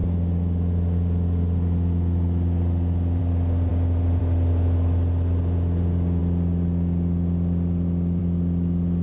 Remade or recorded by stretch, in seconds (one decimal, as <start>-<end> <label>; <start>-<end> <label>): 0.0-9.0 recorded